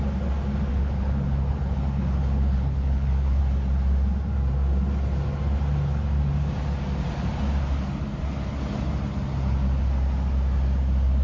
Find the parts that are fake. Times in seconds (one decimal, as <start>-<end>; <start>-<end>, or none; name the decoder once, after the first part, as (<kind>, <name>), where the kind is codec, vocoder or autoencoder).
0.7-3.4 (codec, HILCodec)

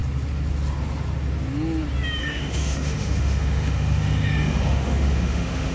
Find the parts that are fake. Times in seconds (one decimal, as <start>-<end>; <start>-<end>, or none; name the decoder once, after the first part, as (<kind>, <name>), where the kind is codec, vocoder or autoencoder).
2.2-5.7 (autoencoder, DAC-VAE)

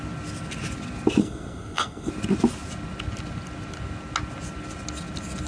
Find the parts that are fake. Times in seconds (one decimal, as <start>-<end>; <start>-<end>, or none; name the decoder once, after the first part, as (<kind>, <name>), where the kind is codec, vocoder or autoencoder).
1.2-2.1 (codec, SNAC)

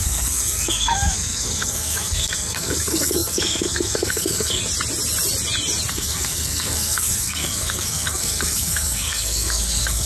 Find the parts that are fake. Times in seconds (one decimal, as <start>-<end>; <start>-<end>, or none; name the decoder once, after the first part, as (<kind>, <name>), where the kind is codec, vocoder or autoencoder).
0.0-4.6 (codec, SNAC); 5.9-10.1

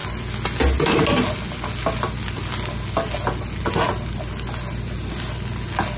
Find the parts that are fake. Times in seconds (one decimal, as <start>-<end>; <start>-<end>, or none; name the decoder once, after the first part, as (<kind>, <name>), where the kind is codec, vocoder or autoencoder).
none

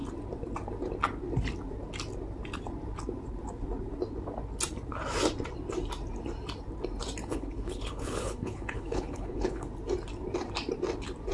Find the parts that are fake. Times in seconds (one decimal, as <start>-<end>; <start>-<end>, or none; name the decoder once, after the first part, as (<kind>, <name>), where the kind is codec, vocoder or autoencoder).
7.2-9.7 (codec, HILCodec)

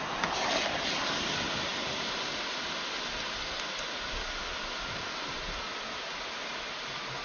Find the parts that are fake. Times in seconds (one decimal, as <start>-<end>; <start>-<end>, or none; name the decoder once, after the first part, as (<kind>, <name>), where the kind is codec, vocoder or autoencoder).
none

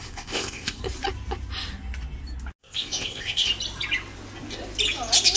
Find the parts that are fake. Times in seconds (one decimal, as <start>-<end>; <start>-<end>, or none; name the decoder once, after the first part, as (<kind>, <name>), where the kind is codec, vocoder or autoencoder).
0.0-0.8 (codec, ZipCodec); 2.6-3.5